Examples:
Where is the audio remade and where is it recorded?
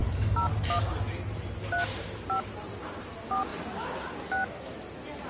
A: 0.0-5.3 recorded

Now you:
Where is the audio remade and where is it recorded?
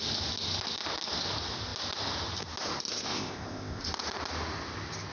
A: 0.0-2.9 recorded; 2.9-3.8 remade; 3.8-5.1 recorded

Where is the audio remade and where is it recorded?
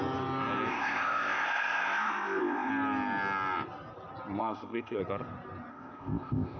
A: 0.0-0.7 recorded; 0.7-2.7 remade; 2.7-4.4 recorded; 4.4-5.0 remade; 5.0-5.7 recorded; 5.7-6.6 remade